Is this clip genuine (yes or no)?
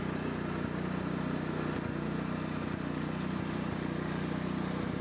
yes